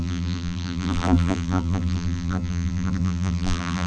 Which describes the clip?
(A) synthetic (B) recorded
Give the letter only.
A